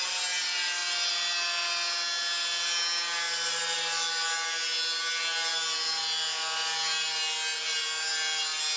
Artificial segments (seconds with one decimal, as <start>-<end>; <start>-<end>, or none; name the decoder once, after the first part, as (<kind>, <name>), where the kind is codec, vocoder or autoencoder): none